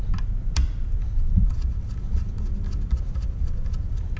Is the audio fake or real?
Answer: real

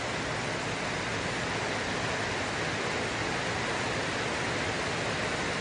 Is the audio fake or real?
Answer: real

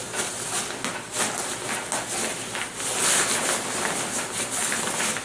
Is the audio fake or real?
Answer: real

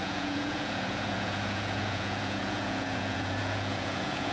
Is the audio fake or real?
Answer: fake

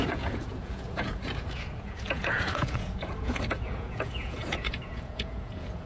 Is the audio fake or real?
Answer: fake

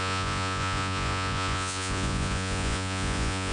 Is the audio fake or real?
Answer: fake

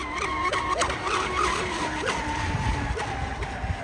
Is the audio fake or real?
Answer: real